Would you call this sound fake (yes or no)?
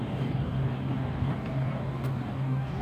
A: yes